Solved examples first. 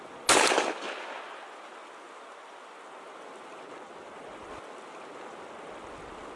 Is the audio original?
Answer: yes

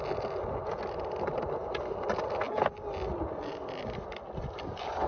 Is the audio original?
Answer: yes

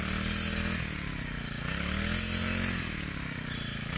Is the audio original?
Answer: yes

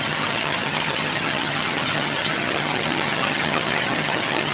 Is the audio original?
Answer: no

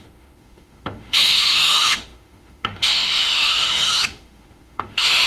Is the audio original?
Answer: no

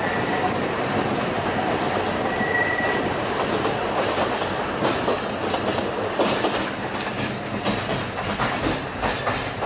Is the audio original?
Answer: yes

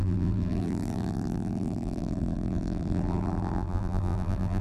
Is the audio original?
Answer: no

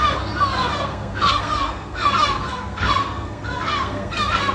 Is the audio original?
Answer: no